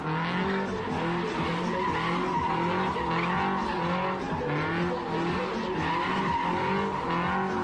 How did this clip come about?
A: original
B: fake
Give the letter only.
A